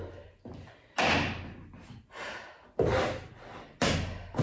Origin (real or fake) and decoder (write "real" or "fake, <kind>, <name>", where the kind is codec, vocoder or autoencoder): real